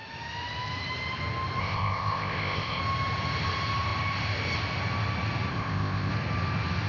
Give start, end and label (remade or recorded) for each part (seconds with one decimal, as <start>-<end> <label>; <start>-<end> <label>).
0.0-1.6 recorded; 1.6-2.8 remade; 2.8-5.5 recorded; 5.5-6.1 remade; 6.1-6.9 recorded